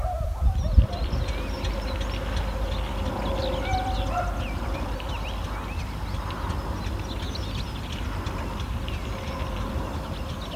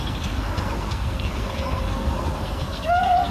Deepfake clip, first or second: second